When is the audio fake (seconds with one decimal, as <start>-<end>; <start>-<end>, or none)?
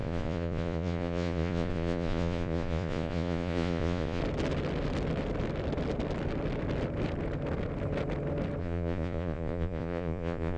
0.0-4.2; 8.6-10.6